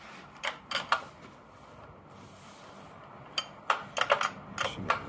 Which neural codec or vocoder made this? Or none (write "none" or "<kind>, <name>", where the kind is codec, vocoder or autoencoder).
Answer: none